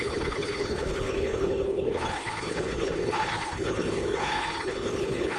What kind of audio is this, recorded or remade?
remade